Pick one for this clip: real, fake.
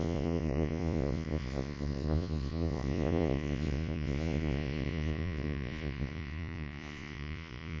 fake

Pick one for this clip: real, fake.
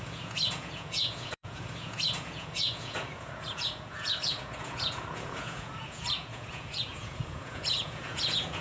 fake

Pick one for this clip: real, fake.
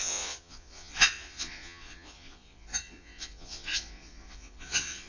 fake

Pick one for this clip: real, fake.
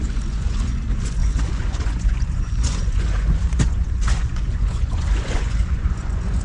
fake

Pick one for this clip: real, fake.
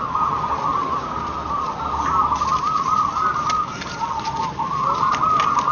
real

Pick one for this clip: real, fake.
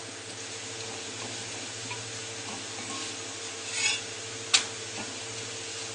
real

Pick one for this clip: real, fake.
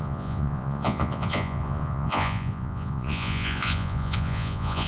fake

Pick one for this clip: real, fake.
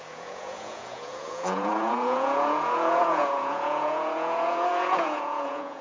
fake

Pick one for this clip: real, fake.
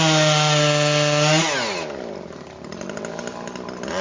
real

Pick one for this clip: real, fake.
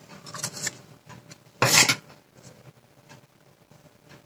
real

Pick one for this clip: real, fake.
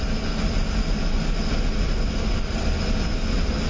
real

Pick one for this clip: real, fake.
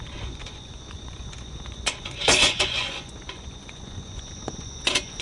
fake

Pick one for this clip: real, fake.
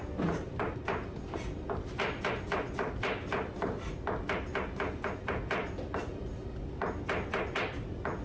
real